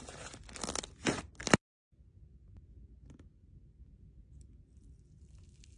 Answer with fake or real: real